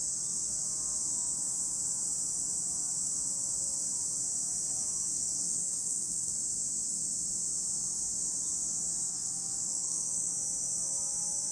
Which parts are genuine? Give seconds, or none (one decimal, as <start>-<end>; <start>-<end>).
0.0-5.1; 6.3-9.1; 10.3-11.5